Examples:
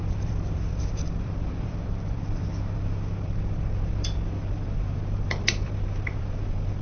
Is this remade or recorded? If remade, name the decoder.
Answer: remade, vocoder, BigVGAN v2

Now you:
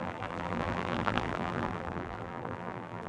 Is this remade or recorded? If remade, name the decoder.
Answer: remade, vocoder, BigVGAN v2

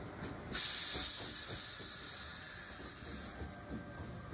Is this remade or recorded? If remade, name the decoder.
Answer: recorded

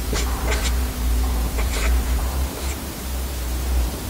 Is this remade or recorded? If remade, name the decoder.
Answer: remade, vocoder, BigVGAN v2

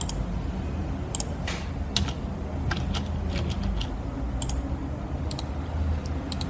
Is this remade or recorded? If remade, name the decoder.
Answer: recorded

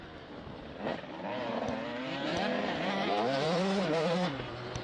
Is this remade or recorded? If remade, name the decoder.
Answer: remade, vocoder, BigVGAN v2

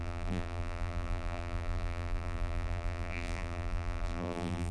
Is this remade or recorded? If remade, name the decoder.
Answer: remade, vocoder, BigVGAN v2